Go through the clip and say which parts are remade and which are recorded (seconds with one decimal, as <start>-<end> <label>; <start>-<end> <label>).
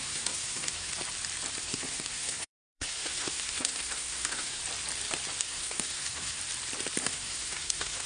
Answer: 0.0-0.9 remade; 0.9-1.6 recorded; 1.6-4.6 remade; 4.6-5.4 recorded; 5.4-6.4 remade; 6.4-7.0 recorded; 7.0-8.1 remade